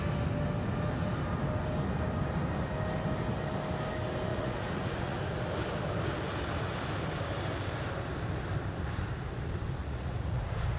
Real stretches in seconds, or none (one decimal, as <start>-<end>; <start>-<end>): 0.0-4.3; 5.2-9.8; 10.4-10.8